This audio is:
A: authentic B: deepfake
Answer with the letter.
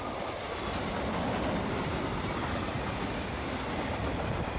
A